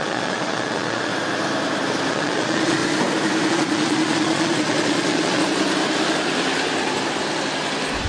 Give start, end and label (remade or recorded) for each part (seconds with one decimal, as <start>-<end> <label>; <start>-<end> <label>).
0.0-1.1 remade; 1.1-2.1 recorded; 2.1-2.8 remade; 2.8-3.5 recorded; 3.5-5.4 remade; 5.4-8.1 recorded